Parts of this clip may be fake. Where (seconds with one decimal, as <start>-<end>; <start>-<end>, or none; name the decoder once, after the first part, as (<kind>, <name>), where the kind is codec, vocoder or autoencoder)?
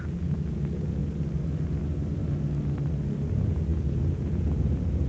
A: 0.0-1.0 (vocoder, Vocos); 3.3-5.1